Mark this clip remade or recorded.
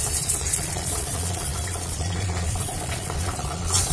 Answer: remade